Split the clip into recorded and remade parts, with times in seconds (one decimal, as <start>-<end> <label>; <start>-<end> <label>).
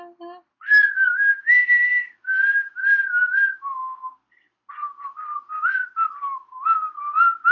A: 0.0-0.7 recorded; 0.7-1.3 remade; 1.3-7.5 recorded